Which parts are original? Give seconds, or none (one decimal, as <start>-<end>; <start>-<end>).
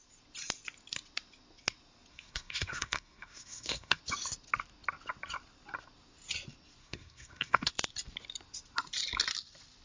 0.0-2.1; 4.0-6.8; 7.7-9.8